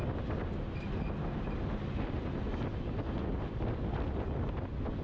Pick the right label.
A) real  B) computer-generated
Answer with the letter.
A